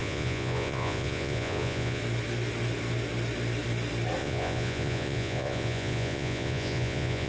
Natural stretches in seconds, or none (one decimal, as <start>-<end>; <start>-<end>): 2.0-4.2